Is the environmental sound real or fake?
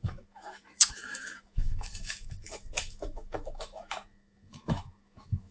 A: fake